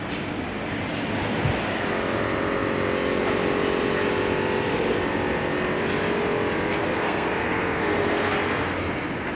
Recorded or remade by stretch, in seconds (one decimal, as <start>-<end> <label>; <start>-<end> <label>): 0.0-6.8 recorded; 6.8-8.3 remade; 8.3-9.3 recorded